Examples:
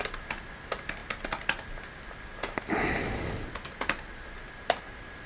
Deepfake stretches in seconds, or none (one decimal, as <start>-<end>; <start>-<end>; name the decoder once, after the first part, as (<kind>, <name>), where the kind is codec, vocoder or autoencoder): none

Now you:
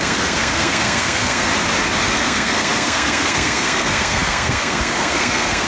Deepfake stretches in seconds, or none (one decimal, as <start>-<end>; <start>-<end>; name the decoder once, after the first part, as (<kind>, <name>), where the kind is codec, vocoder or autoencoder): 0.0-1.5 (codec, SNAC); 2.0-5.7

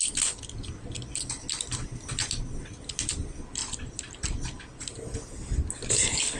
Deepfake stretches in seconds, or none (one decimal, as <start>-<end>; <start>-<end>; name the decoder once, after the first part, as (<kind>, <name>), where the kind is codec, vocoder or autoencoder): none

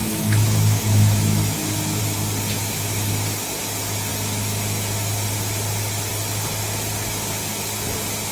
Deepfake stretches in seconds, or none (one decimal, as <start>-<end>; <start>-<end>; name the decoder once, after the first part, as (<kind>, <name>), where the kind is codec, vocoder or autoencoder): 0.0-2.0 (autoencoder, DAC-VAE); 2.5-3.1

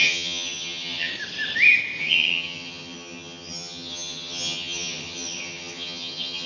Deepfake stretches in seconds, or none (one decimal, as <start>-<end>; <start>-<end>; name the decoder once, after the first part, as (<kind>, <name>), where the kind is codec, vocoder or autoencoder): 0.0-1.1 (vocoder, HiFi-GAN); 2.0-6.5

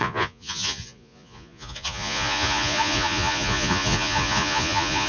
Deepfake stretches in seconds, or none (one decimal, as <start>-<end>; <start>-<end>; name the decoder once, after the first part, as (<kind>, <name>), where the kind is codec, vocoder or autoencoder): 0.0-5.1 (vocoder, Vocos)

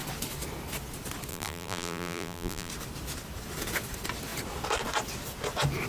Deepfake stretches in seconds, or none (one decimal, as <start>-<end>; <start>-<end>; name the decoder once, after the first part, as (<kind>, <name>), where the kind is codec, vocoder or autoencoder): 1.3-2.7 (vocoder, BigVGAN v2)

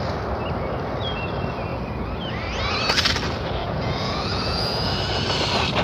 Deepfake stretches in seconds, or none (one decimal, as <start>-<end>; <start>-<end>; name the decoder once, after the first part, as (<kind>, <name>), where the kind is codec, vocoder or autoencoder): 3.6-4.9 (vocoder, Vocos)